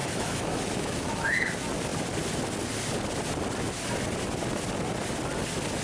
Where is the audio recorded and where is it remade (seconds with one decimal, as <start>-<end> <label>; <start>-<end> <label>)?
0.0-1.5 remade; 1.5-5.8 recorded